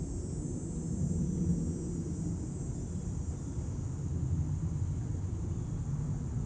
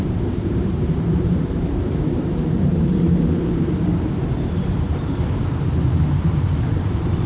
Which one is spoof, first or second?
second